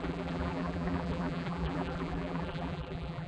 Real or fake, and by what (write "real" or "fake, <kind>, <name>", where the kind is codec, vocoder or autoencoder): fake, vocoder, BigVGAN v2